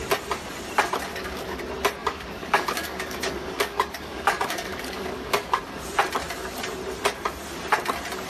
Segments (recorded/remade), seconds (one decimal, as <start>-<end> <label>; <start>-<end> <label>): 0.0-1.1 recorded; 1.1-1.6 remade; 1.6-2.0 recorded; 2.0-5.6 remade; 5.6-8.3 recorded